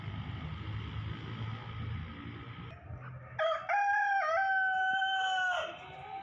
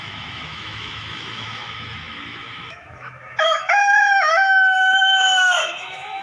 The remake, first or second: second